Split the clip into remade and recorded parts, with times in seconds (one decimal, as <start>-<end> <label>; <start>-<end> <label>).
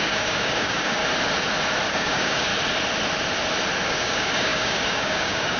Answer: 0.0-1.0 remade; 1.0-1.9 recorded; 1.9-2.5 remade; 2.5-3.9 recorded; 3.9-5.6 remade